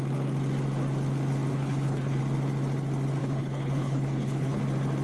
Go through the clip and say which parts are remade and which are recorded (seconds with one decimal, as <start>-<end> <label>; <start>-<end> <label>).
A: 0.0-1.5 recorded; 1.5-2.2 remade; 2.2-3.2 recorded; 3.2-4.6 remade; 4.6-5.0 recorded